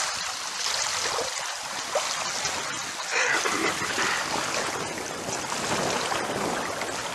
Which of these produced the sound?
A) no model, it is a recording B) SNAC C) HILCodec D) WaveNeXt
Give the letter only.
A